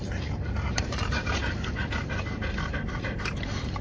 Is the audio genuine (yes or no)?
no